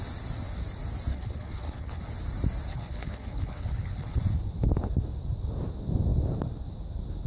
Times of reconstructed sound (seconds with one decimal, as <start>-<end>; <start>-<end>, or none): 1.1-2.0; 2.7-4.2